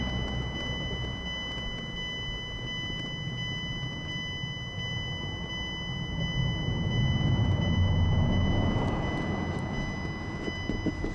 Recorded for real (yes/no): yes